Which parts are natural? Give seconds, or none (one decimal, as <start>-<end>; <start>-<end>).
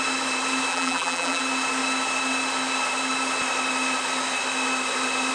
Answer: 0.0-0.7; 1.4-5.3